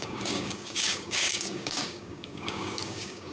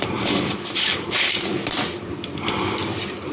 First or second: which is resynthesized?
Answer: first